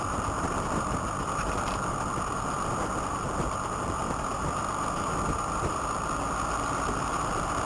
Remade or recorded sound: remade